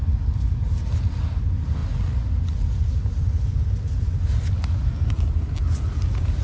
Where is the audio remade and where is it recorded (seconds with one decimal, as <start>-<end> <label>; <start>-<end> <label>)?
0.0-6.4 recorded